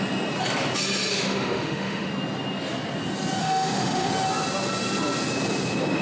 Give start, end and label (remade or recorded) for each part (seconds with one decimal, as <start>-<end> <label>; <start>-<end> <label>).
0.0-1.1 recorded; 1.1-2.1 remade; 2.1-3.4 recorded; 3.4-4.1 remade; 4.1-6.0 recorded